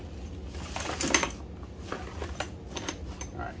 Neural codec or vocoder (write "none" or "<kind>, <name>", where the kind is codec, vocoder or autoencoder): none